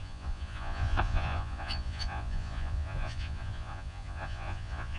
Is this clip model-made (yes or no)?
yes